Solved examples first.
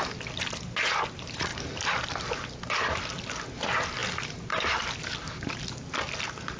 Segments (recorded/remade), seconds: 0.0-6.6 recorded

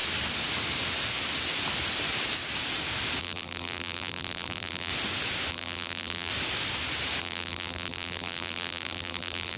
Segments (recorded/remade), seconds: 0.0-3.2 recorded; 3.2-4.9 remade; 4.9-5.5 recorded; 5.5-6.3 remade; 6.3-7.2 recorded; 7.2-9.6 remade

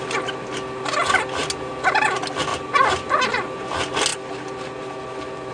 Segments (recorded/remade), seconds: 0.0-5.5 recorded